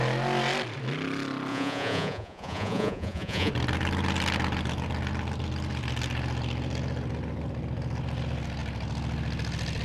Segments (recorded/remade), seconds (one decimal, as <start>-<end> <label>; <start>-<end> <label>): 0.0-1.5 recorded; 1.5-3.5 remade; 3.5-9.8 recorded